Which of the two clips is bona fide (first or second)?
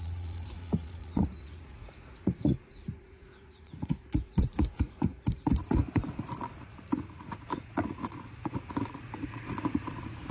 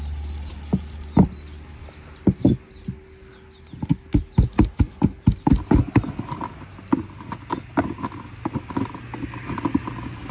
second